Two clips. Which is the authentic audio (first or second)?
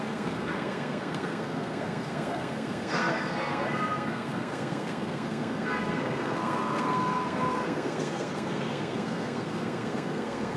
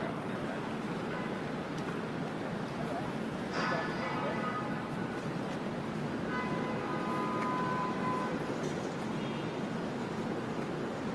second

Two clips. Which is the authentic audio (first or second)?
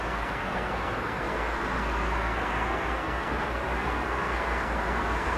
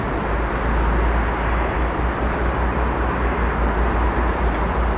second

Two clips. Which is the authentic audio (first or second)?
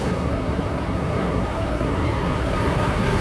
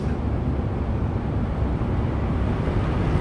second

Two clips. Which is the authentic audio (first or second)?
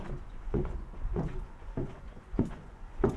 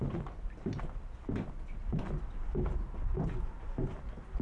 second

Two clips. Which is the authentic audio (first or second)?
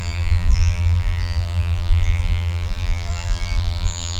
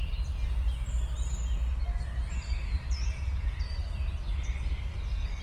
second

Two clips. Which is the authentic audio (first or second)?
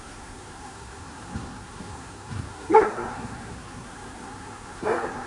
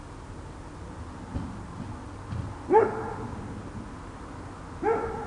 second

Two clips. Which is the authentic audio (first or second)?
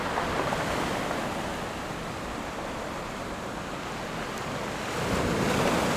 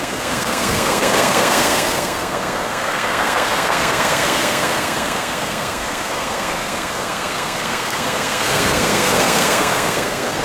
first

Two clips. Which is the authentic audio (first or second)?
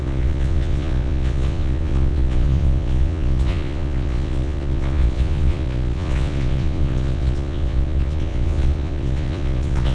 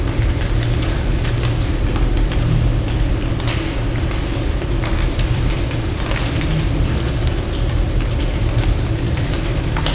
second